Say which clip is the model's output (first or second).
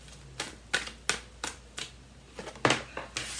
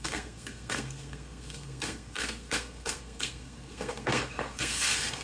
second